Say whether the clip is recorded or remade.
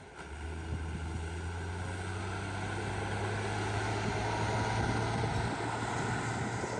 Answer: recorded